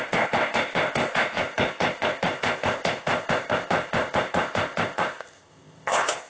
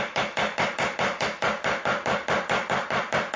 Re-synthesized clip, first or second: first